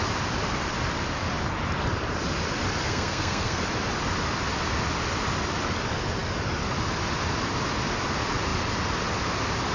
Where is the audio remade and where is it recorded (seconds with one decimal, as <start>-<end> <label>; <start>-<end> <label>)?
0.0-2.8 recorded; 2.8-3.6 remade; 3.6-9.7 recorded